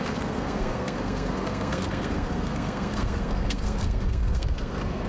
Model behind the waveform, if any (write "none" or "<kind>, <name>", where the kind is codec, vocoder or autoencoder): codec, SNAC